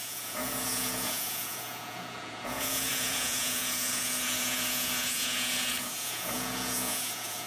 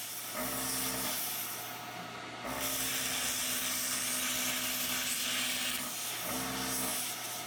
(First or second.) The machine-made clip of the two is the first